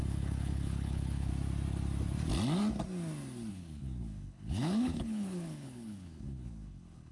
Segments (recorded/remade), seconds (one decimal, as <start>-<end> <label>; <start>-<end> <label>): 0.0-1.3 remade; 1.3-3.5 recorded; 3.5-7.1 remade